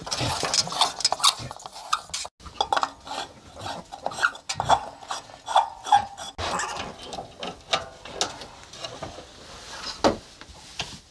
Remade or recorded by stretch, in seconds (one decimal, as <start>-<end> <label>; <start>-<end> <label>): 0.0-11.1 recorded